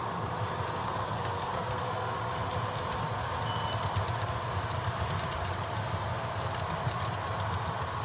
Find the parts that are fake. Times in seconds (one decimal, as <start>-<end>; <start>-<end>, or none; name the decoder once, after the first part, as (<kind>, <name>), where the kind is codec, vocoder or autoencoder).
0.8-1.8 (codec, SNAC)